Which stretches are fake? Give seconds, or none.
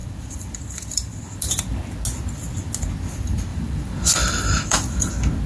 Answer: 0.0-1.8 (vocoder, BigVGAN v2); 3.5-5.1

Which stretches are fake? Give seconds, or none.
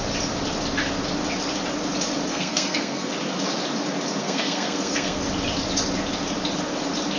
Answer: 2.3-3.1 (codec, SNAC); 4.2-5.2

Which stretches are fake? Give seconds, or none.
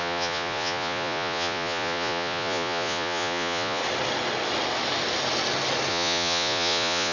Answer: 0.0-3.8 (vocoder, Vocos); 5.9-7.1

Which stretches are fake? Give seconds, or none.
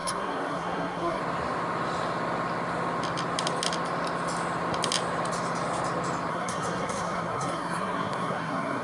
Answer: 0.0-1.2 (codec, SNAC); 6.3-8.8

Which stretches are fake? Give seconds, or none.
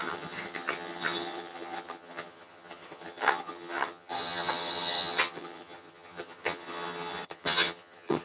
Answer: 0.0-8.2 (vocoder, HiFi-GAN)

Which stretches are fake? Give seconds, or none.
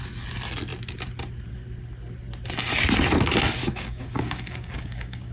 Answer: 3.6-5.3 (codec, DAC)